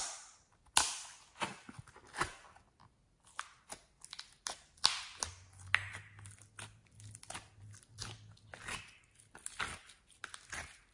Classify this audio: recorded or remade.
recorded